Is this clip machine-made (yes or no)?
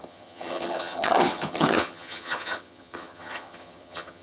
yes